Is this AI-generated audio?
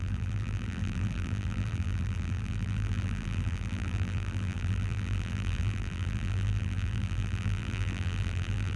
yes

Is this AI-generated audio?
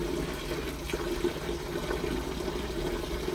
no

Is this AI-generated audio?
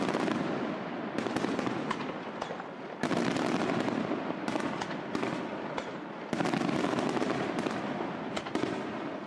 no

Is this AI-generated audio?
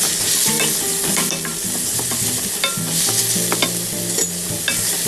no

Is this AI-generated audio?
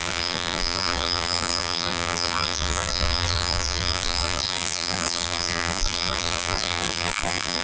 yes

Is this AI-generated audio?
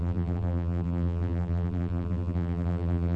yes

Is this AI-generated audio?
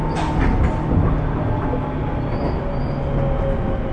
no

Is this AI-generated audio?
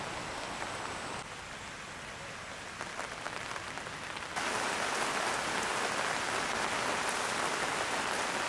no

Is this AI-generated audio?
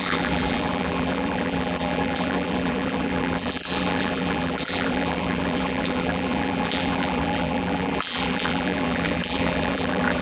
yes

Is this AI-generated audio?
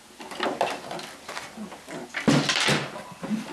no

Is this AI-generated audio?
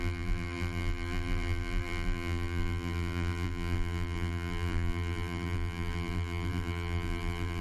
yes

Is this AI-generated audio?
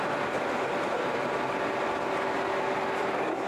no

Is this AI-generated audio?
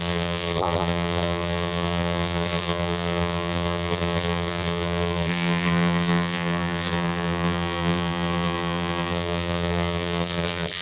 yes